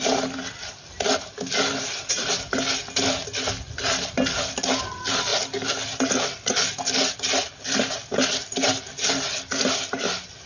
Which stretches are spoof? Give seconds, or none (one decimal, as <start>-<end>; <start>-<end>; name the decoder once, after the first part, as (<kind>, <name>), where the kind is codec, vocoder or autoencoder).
none